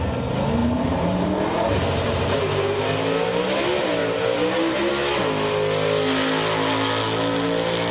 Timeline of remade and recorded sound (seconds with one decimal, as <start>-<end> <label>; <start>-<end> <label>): 0.0-0.6 recorded; 0.6-2.8 remade; 2.8-4.0 recorded; 4.0-4.9 remade; 4.9-7.9 recorded